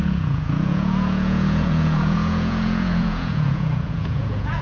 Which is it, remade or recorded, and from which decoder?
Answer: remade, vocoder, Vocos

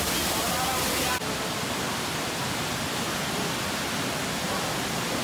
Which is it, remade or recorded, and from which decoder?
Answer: recorded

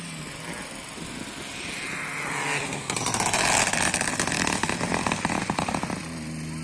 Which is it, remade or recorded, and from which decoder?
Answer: recorded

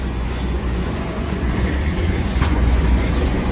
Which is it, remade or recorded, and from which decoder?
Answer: remade, vocoder, Vocos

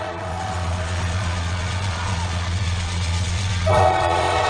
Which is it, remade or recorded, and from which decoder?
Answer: remade, vocoder, Vocos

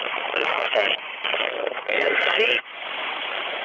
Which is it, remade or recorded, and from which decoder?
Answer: remade, vocoder, Vocos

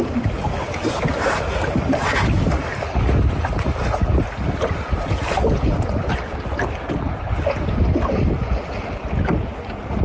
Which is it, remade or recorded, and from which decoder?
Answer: recorded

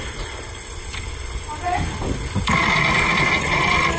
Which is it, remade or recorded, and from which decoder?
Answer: recorded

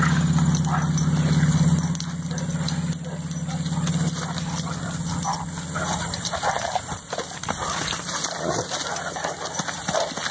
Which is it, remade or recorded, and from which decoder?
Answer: recorded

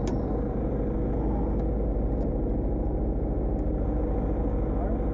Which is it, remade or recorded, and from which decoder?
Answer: recorded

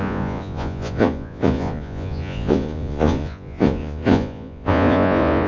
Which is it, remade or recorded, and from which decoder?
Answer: remade, vocoder, Vocos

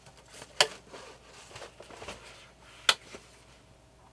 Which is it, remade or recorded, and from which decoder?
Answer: recorded